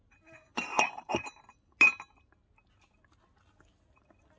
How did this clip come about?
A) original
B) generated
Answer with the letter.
A